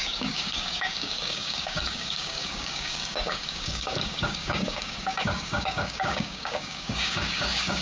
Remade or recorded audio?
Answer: remade